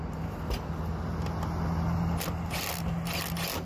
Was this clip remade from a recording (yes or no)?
no